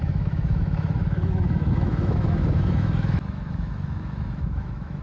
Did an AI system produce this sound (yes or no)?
yes